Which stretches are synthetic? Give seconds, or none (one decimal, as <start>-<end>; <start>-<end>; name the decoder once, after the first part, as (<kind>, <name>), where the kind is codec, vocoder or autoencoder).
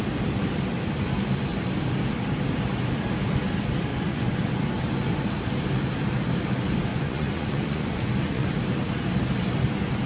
3.9-4.5 (vocoder, Vocos); 6.9-8.5